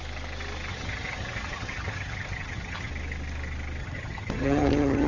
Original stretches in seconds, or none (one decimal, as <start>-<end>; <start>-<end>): 0.0-0.7; 2.9-3.8